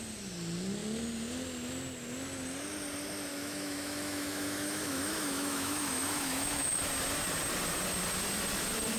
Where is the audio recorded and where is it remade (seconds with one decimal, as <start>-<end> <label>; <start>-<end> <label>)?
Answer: 0.0-3.3 recorded; 3.3-6.9 remade; 6.9-9.0 recorded